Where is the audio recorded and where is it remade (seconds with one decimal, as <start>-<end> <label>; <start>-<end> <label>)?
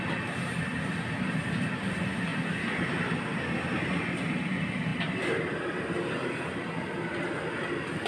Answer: 0.0-8.1 recorded